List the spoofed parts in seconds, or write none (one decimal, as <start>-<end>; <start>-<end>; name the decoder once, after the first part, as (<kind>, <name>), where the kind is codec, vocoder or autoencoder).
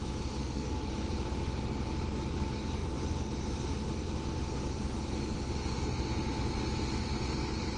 0.4-0.9 (codec, SNAC)